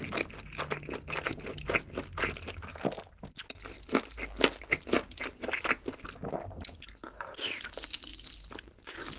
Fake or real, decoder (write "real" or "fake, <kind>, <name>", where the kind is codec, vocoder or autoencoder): real